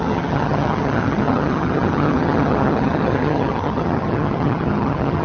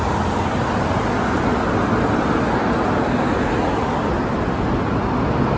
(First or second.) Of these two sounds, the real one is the second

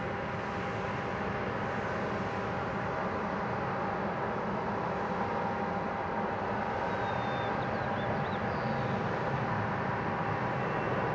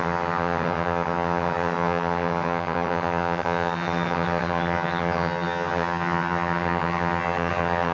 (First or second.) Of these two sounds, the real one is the first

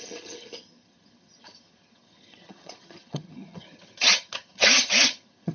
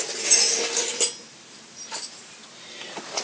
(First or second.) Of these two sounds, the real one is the second